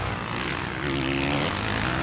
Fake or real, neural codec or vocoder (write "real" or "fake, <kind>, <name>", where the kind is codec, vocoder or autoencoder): real